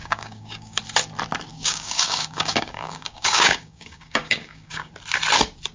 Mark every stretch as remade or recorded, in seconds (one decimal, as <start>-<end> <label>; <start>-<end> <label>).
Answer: 0.0-0.8 remade; 0.8-1.5 recorded; 1.5-4.9 remade; 4.9-5.7 recorded